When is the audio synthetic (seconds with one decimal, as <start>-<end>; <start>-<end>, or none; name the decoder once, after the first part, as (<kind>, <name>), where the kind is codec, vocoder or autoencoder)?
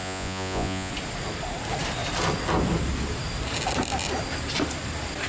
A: 0.0-0.9 (vocoder, Vocos)